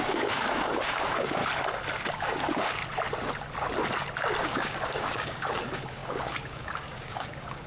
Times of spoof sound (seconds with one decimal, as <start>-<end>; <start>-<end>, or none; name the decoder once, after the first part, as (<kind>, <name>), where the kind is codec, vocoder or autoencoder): 0.0-1.4 (codec, DAC); 2.1-2.8; 4.4-7.7

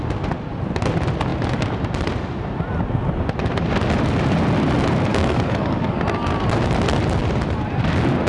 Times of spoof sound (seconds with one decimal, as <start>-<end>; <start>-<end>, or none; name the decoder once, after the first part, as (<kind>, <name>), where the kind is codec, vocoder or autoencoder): 5.1-6.0 (codec, DAC)

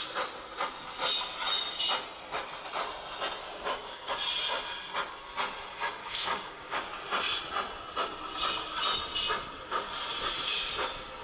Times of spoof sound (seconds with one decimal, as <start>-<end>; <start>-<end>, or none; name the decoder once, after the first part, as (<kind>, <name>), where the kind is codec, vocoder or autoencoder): 3.4-4.1 (codec, DAC); 6.0-6.9